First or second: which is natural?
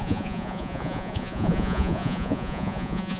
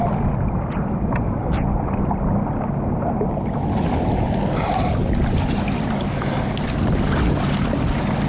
second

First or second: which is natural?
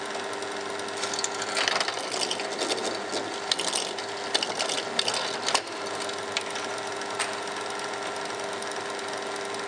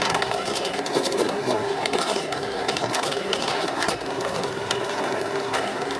first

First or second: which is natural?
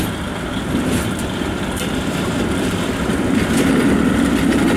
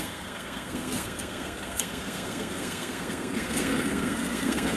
first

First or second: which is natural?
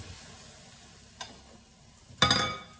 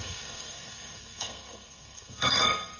first